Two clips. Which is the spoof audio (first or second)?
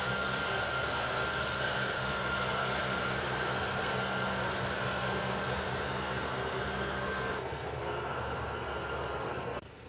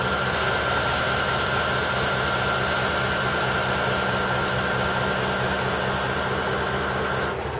first